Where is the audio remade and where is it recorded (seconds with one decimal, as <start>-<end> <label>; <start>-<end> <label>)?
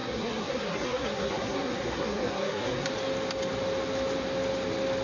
0.0-2.9 remade; 2.9-5.0 recorded